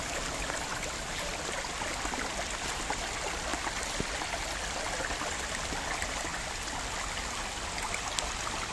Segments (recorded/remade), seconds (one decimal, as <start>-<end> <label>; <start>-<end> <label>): 0.0-8.7 recorded